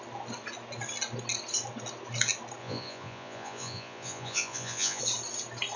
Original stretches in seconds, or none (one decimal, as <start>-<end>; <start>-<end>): 0.0-2.6; 5.0-5.8